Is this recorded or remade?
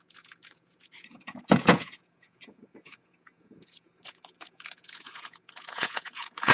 remade